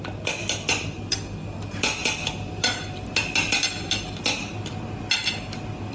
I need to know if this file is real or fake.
real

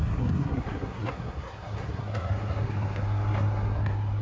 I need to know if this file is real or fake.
fake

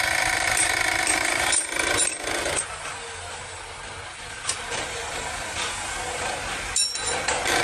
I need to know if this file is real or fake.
real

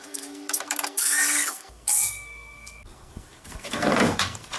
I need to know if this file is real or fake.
fake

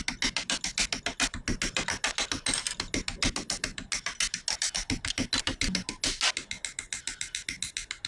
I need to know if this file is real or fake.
real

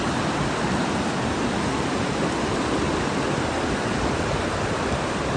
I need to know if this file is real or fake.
real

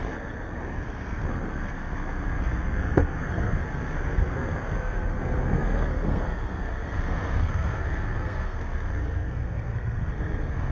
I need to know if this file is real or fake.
fake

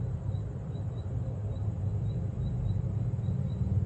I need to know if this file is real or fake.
real